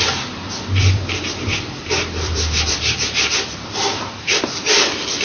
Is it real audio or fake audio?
fake